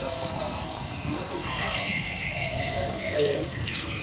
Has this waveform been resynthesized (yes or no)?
yes